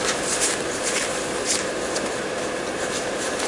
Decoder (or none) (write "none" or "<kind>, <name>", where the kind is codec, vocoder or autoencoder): vocoder, BigVGAN v2